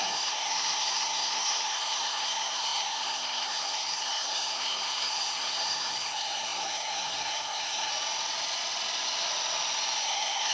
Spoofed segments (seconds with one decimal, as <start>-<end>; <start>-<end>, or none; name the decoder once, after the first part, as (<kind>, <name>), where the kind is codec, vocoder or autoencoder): 0.0-7.9 (codec, SNAC); 10.0-10.5